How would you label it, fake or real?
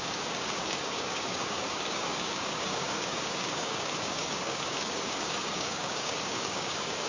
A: fake